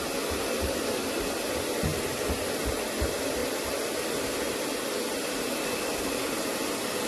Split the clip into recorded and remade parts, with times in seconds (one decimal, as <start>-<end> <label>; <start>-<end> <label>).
0.0-3.4 remade; 3.4-4.3 recorded; 4.3-7.1 remade